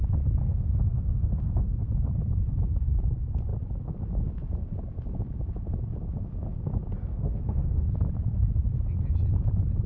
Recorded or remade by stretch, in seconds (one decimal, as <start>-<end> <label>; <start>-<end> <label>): 0.0-0.4 recorded; 0.4-1.9 remade; 1.9-7.1 recorded; 7.1-7.8 remade; 7.8-9.9 recorded